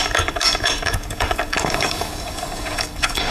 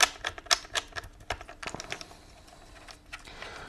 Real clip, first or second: second